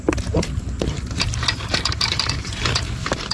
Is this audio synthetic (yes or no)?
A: yes